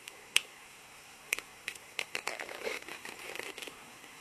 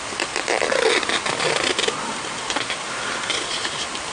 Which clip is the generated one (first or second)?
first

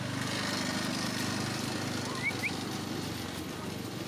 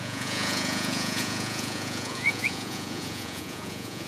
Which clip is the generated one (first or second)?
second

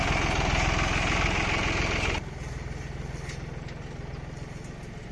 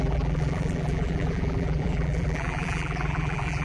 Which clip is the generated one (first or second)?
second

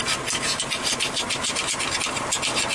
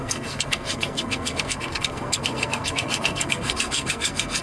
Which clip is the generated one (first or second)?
second